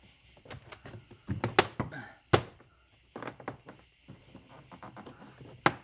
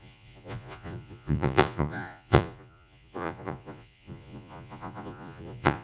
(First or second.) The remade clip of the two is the second